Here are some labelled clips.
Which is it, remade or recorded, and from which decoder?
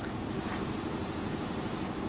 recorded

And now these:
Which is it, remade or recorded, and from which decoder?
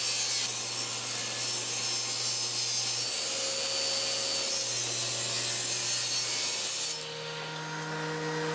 recorded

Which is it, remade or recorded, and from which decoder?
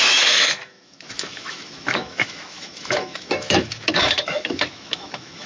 remade, autoencoder, DAC-VAE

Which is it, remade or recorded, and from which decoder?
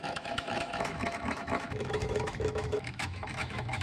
remade, autoencoder, DAC-VAE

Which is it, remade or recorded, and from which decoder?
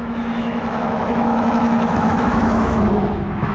remade, autoencoder, DAC-VAE